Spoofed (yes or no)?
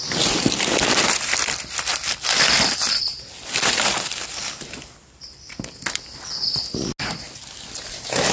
no